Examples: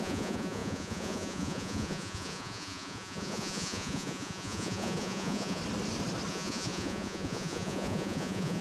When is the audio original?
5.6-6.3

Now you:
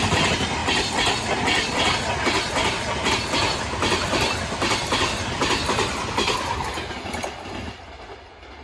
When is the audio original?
0.0-8.6

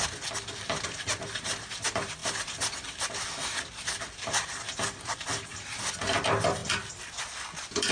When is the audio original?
0.0-7.9

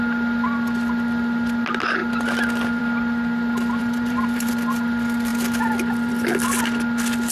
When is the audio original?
0.0-3.8; 4.5-7.3

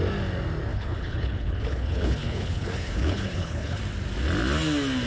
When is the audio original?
0.0-0.7; 3.8-5.1

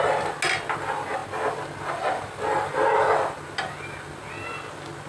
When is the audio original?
0.0-5.1

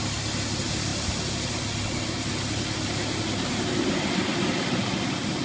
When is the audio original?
0.0-5.4

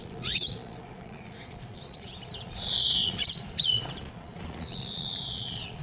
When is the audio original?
none